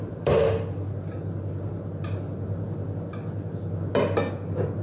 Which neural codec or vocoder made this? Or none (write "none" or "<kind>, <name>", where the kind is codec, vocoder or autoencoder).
none